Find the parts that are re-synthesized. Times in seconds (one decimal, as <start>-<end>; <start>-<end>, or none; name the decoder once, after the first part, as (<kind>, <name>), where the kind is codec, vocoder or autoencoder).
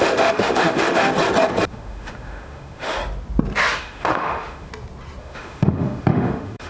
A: 0.0-1.1 (autoencoder, DAC-VAE); 1.7-3.0; 3.8-4.7; 5.2-6.7